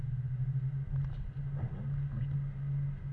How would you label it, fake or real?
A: real